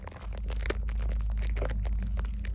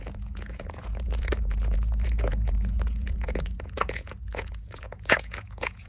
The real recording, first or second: first